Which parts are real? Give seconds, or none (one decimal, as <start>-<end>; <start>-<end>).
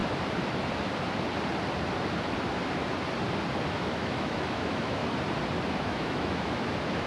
0.0-3.7; 5.0-5.7